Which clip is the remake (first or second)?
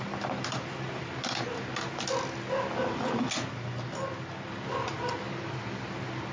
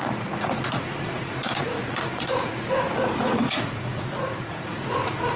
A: second